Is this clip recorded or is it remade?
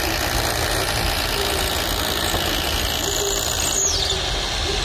recorded